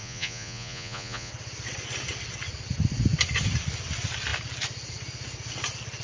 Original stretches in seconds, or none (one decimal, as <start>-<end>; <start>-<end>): 1.3-6.0